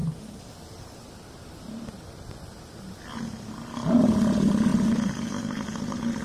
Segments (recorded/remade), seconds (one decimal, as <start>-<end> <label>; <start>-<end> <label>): 0.0-4.7 recorded; 4.7-5.3 remade; 5.3-6.2 recorded